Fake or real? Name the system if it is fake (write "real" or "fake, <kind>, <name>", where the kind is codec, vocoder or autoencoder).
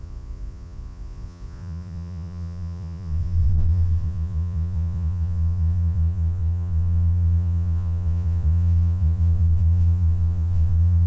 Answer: fake, vocoder, Vocos